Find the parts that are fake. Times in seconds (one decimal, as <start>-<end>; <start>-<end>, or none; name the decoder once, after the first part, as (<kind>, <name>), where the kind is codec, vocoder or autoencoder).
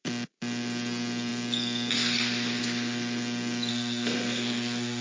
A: 3.7-5.0 (codec, SNAC)